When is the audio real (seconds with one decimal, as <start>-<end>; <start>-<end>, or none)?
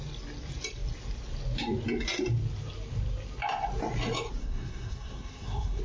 0.0-4.4